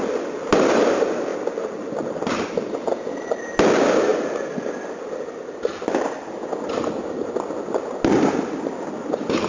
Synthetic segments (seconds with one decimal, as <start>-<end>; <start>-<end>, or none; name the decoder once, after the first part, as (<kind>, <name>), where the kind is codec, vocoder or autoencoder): none